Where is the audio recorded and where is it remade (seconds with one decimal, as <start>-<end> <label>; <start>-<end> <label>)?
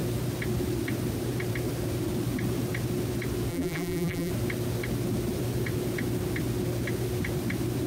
0.0-3.5 recorded; 3.5-4.3 remade; 4.3-7.9 recorded